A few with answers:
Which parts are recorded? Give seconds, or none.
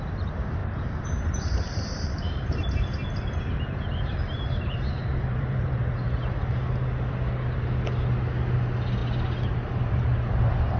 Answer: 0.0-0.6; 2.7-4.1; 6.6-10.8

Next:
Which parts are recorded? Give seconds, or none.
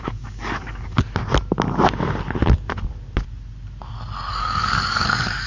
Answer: 1.0-4.3